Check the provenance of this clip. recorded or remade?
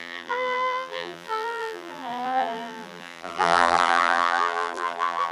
remade